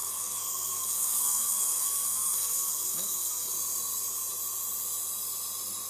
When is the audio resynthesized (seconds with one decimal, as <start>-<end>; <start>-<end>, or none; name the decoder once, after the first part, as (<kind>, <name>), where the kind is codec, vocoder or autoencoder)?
0.0-3.5 (codec, SNAC)